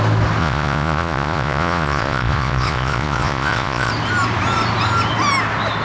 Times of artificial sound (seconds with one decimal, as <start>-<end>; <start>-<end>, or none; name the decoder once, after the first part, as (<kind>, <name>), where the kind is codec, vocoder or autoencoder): 0.4-3.9 (vocoder, Vocos)